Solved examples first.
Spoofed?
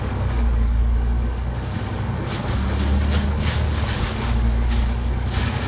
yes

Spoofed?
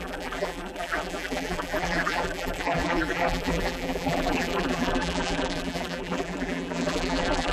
yes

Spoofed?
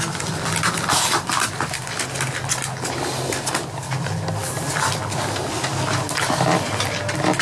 no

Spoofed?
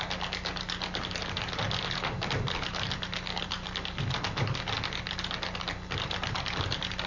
no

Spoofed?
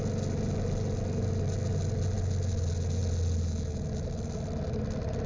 no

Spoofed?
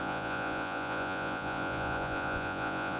yes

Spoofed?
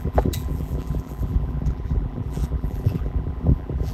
yes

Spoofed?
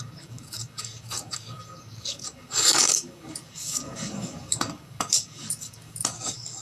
yes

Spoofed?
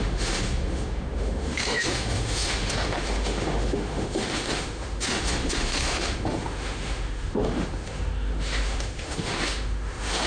yes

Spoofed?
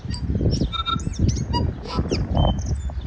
no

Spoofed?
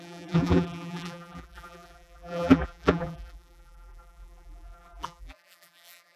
yes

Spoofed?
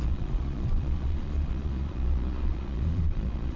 yes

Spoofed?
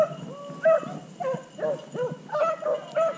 no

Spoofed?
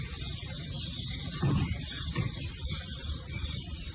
yes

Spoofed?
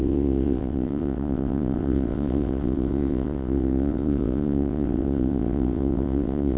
yes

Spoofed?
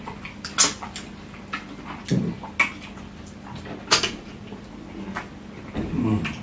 no